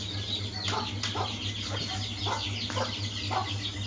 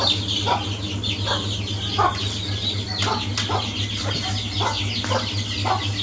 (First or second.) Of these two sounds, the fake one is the first